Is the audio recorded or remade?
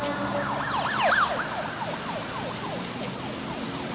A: recorded